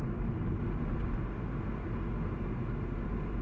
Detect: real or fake real